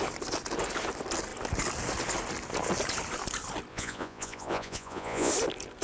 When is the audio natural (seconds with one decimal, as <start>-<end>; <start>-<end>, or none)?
0.0-3.7; 5.3-5.8